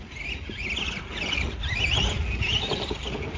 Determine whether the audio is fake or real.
real